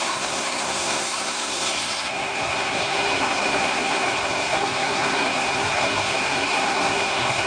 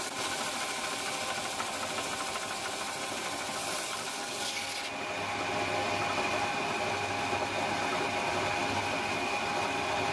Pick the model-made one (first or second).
first